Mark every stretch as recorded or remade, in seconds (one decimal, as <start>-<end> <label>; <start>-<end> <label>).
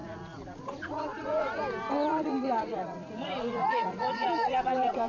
0.0-1.6 remade; 1.6-2.0 recorded; 2.0-5.1 remade